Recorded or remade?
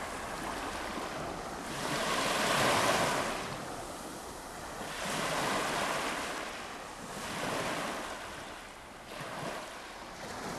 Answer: recorded